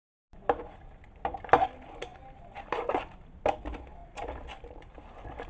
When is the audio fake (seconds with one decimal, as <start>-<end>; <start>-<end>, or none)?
0.0-1.5; 2.1-2.9; 4.0-5.5